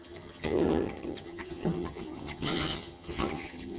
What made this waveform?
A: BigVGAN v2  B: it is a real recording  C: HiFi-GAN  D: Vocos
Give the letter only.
C